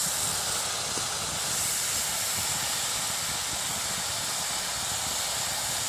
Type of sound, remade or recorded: recorded